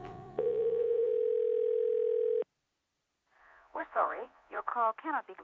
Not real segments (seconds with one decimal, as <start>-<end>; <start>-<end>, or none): 0.0-1.1; 3.4-4.7

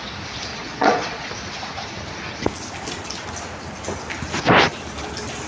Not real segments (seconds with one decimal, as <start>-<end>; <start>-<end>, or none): 0.5-1.3

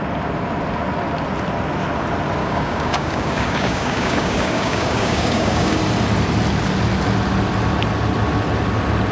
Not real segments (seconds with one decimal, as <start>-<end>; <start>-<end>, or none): 2.4-5.8

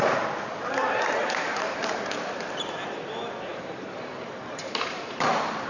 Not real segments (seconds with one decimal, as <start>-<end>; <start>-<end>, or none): 1.2-2.4; 3.5-5.7

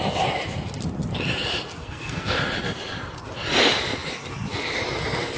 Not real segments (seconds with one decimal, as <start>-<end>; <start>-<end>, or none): 1.8-2.4

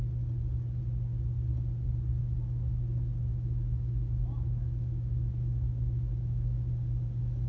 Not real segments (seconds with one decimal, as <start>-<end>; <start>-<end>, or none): 2.2-2.8; 3.3-6.7